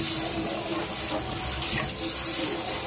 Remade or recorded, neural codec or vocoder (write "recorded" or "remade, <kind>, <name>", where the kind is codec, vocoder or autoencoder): recorded